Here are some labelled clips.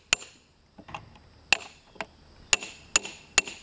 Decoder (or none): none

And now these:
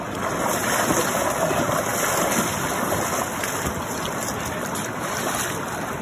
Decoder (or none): none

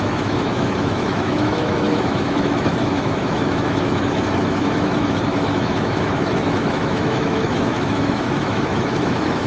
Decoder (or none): autoencoder, DAC-VAE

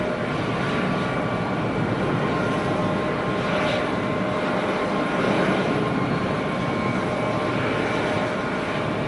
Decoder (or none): none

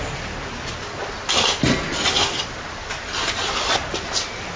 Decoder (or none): none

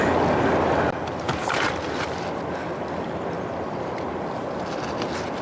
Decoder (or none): none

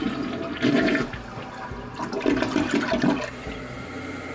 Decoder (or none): none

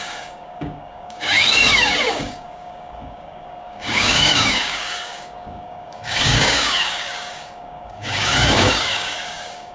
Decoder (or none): codec, DAC